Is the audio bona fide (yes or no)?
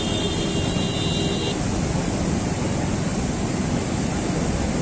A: yes